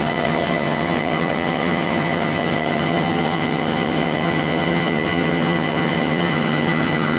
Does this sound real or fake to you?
fake